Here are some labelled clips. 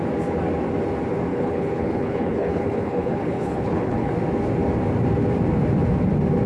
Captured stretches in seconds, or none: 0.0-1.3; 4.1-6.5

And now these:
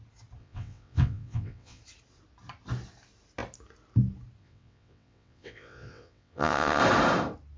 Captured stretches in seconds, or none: 0.0-0.4; 1.8-4.4; 6.8-7.6

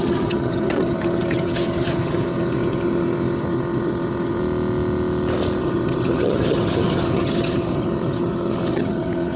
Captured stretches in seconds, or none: 4.4-5.6